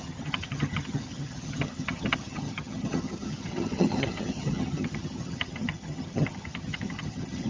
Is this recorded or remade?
remade